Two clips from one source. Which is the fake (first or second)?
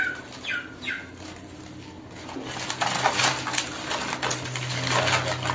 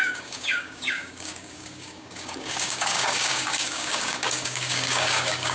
second